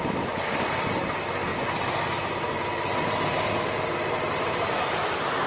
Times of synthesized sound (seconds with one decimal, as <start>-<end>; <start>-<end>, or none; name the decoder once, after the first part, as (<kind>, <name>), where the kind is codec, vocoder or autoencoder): none